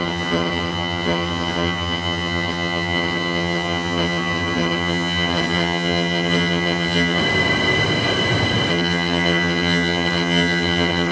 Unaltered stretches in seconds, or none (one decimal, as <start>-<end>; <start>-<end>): 7.2-8.7